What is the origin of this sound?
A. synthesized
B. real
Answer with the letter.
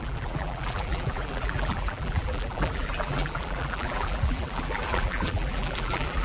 A